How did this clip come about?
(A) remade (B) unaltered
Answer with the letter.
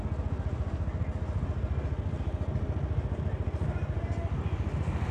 B